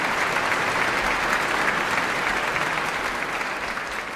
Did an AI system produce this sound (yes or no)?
no